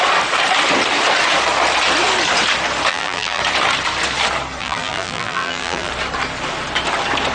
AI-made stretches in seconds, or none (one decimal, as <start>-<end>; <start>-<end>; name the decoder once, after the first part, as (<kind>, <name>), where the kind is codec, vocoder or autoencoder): 2.9-3.4 (vocoder, BigVGAN v2); 4.6-5.9